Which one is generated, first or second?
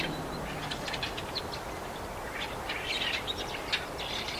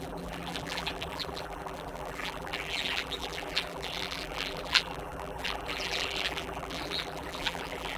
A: second